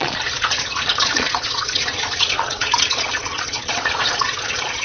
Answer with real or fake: fake